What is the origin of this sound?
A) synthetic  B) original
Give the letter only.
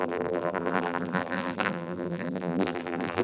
A